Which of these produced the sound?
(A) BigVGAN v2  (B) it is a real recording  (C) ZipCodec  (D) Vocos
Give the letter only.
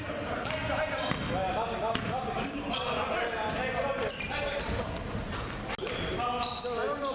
B